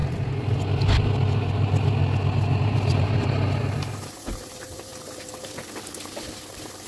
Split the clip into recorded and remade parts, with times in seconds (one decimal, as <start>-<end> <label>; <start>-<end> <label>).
0.0-2.6 recorded; 2.6-4.9 remade; 4.9-6.5 recorded; 6.5-6.9 remade